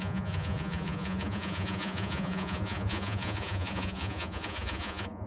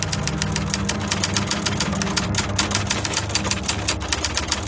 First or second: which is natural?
second